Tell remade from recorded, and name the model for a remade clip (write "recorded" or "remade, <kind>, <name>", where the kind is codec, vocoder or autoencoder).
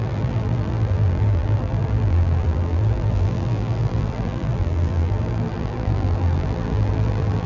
remade, vocoder, BigVGAN v2